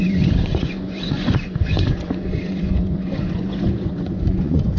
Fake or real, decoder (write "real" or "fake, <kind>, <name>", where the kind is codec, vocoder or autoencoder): fake, vocoder, Vocos